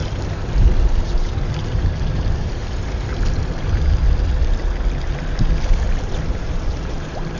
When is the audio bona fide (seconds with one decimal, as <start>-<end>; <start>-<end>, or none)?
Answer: 0.0-1.0; 2.6-6.3